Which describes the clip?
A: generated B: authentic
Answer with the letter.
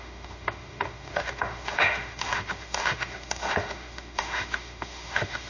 A